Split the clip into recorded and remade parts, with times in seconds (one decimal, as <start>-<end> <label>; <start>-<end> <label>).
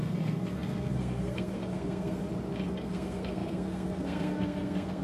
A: 0.0-2.2 remade; 2.2-2.7 recorded; 2.7-5.0 remade